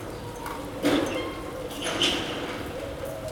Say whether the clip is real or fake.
real